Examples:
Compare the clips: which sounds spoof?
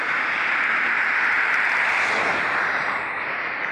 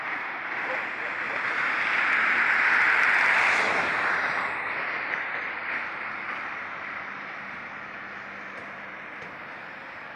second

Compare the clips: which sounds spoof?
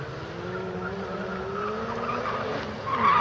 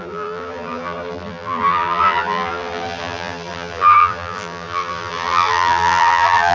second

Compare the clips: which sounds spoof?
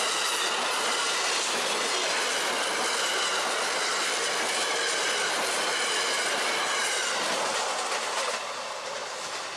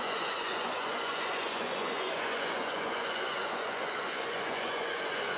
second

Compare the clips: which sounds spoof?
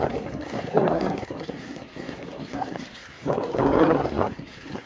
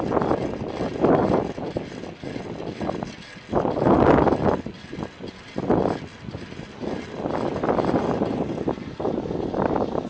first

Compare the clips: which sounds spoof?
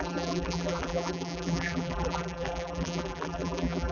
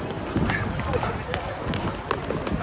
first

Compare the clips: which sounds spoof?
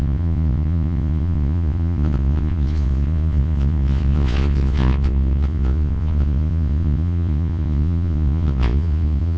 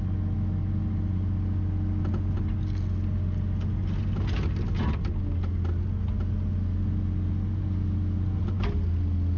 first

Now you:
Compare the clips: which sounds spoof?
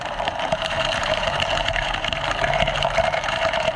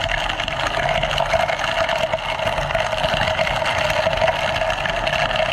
first